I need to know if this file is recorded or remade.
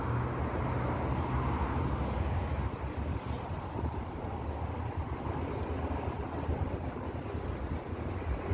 recorded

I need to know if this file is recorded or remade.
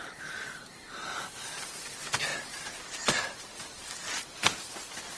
recorded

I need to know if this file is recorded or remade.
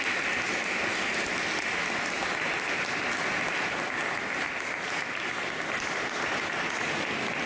recorded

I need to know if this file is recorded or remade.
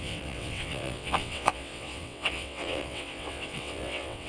remade